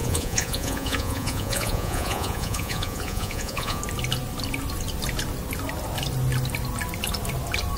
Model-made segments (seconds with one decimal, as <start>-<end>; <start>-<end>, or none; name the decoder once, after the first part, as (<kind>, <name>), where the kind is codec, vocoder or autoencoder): 0.0-3.8 (vocoder, Vocos)